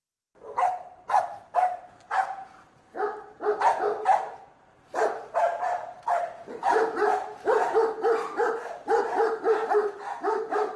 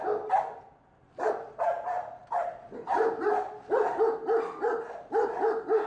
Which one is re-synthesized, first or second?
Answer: first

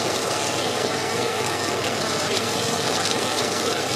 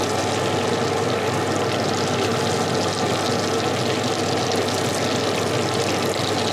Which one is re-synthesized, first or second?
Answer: first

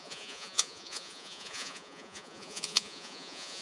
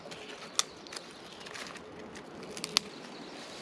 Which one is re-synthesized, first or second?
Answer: first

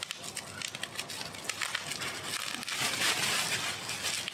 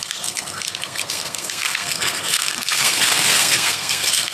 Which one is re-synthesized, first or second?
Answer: second